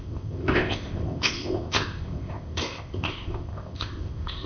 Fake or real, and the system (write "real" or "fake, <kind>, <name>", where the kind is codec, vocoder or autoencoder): fake, codec, ZipCodec